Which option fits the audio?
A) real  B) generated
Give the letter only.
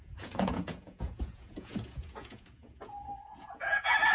B